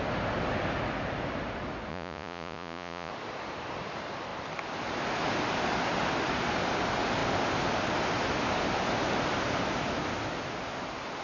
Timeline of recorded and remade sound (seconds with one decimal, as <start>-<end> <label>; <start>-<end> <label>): 0.0-1.9 recorded; 1.9-3.1 remade; 3.1-11.2 recorded